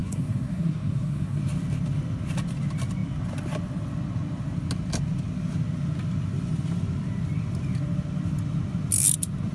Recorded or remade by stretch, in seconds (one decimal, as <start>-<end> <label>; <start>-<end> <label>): 0.0-1.4 remade; 1.4-9.5 recorded